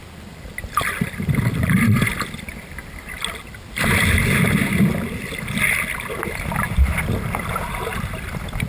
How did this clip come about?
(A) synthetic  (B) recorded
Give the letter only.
B